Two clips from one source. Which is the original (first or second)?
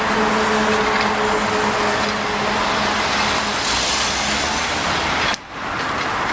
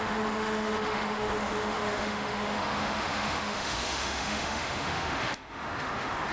first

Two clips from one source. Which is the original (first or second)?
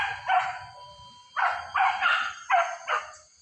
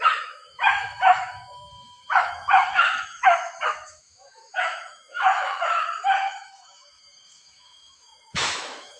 first